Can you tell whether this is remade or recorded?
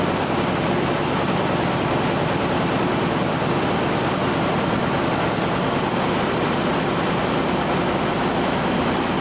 remade